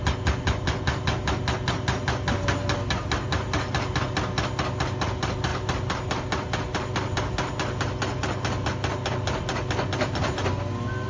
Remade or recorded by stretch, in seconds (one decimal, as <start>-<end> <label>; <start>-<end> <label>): 0.0-11.1 recorded